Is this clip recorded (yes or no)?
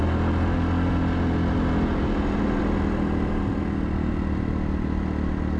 yes